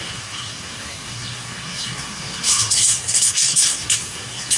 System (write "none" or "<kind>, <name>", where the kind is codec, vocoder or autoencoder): codec, SNAC